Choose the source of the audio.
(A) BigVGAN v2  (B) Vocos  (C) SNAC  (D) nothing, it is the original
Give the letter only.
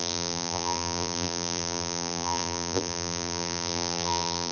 A